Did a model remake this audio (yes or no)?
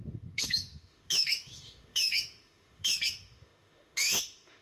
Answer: yes